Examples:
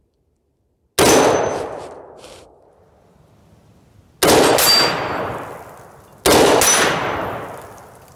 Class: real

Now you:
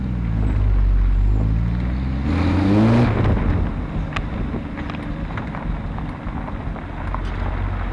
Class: real